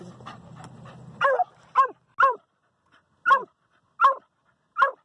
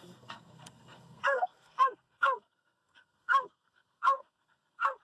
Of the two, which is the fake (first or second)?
second